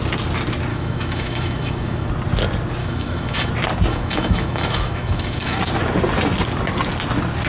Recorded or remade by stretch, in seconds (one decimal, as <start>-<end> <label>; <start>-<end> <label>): 0.0-0.7 recorded; 0.7-2.1 remade; 2.1-2.8 recorded; 2.8-3.5 remade; 3.5-3.9 recorded; 3.9-5.6 remade; 5.6-7.5 recorded